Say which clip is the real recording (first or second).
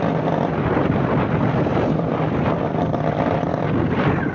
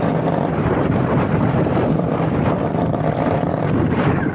first